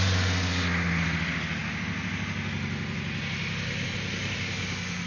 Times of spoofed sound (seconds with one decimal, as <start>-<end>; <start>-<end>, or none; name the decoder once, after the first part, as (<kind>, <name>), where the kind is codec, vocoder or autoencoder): none